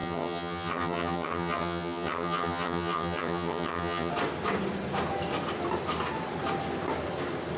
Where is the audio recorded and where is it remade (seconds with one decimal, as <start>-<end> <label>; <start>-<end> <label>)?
0.0-4.1 remade; 4.1-7.6 recorded